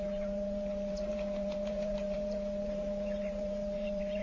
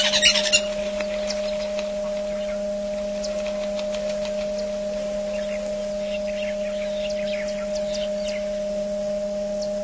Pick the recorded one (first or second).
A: second